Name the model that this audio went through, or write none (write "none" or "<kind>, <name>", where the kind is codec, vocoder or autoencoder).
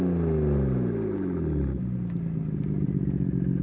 none